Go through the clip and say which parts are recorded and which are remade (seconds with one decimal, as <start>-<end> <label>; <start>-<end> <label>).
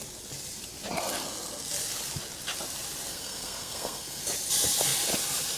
0.0-3.1 recorded; 3.1-4.2 remade; 4.2-5.6 recorded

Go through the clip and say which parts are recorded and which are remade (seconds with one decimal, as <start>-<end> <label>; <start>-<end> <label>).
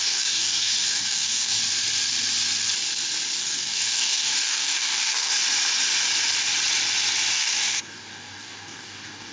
0.0-1.6 remade; 1.6-3.4 recorded; 3.4-5.3 remade; 5.3-7.3 recorded; 7.3-9.3 remade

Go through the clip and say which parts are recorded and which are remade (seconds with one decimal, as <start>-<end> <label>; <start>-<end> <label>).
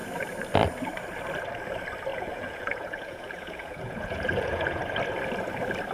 0.0-2.1 recorded; 2.1-4.8 remade; 4.8-5.9 recorded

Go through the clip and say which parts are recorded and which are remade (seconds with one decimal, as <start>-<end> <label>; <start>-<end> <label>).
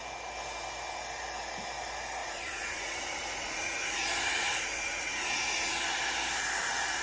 0.0-2.2 recorded; 2.2-5.7 remade; 5.7-7.0 recorded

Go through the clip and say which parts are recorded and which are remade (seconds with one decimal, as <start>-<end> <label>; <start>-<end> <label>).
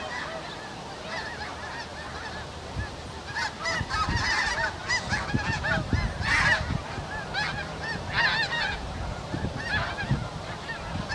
0.0-11.1 recorded